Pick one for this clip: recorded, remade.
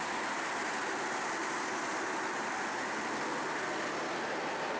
recorded